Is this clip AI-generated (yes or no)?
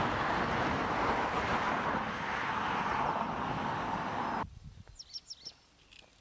no